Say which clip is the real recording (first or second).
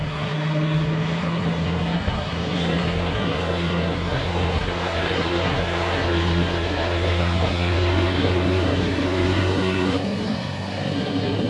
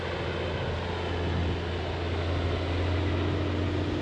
second